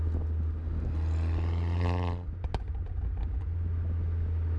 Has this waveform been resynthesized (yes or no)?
no